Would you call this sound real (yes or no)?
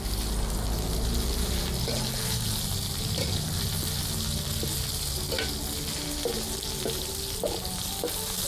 yes